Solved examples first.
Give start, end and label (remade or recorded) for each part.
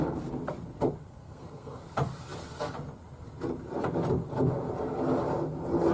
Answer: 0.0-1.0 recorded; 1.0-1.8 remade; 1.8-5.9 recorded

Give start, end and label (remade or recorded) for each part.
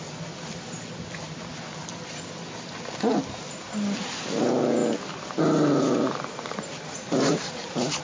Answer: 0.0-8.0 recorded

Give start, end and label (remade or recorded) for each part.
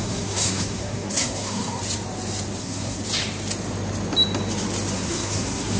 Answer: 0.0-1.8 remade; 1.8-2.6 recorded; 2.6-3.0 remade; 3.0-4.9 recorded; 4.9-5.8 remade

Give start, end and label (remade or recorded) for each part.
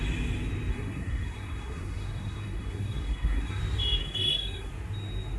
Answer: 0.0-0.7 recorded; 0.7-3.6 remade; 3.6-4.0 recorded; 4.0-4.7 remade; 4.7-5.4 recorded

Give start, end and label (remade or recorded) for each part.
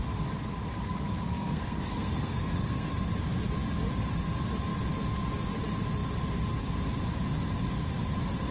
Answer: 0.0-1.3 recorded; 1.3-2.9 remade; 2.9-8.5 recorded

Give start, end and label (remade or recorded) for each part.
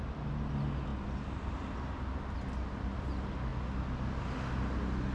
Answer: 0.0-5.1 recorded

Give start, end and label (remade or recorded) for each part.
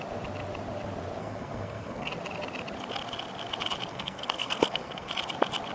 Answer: 0.0-1.2 recorded; 1.2-2.1 remade; 2.1-3.9 recorded; 3.9-5.1 remade; 5.1-5.7 recorded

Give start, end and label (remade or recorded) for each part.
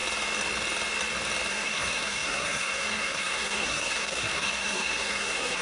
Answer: 0.0-1.5 recorded; 1.5-5.6 remade